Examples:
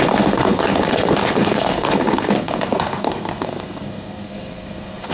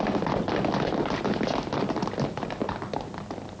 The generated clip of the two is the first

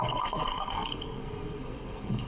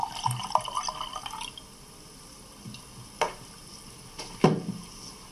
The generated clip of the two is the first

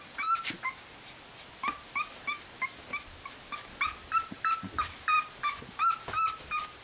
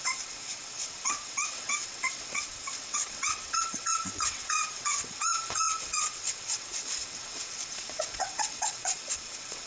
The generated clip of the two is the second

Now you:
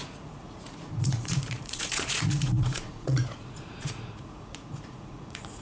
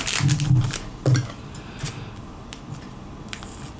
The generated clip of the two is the first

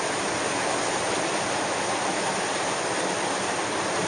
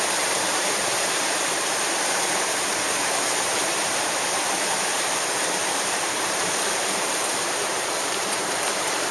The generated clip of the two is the second